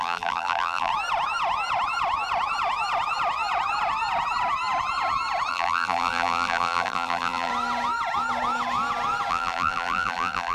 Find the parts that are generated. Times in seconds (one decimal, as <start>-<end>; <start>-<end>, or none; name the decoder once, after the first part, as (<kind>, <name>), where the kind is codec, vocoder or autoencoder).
0.0-0.9 (vocoder, BigVGAN v2); 5.5-7.5; 9.3-10.5